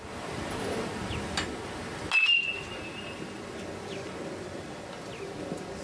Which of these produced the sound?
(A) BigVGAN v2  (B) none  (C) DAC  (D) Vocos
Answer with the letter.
B